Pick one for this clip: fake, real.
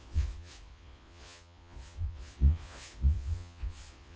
fake